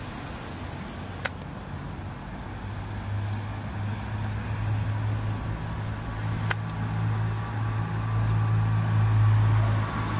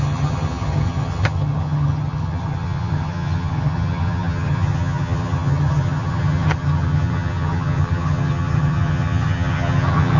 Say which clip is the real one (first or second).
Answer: first